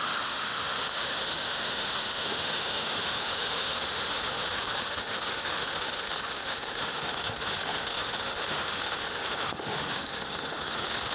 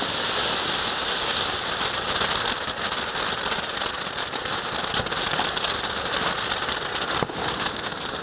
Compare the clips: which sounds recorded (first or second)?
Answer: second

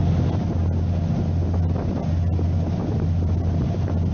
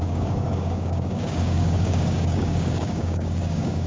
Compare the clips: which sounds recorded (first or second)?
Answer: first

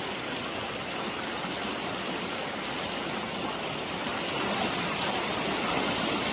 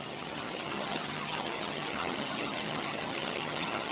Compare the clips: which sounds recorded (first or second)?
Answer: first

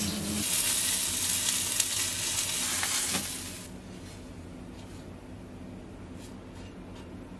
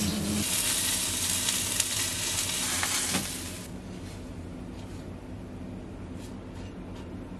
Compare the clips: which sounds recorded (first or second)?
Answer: first